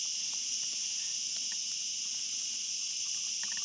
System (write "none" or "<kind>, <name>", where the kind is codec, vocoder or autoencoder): vocoder, Vocos